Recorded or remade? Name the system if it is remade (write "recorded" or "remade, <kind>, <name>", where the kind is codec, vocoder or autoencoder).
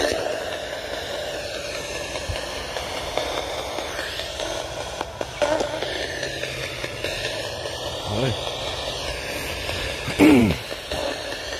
recorded